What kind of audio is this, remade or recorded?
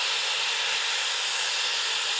recorded